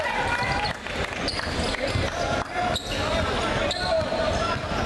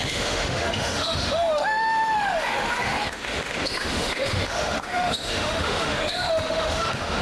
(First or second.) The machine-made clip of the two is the second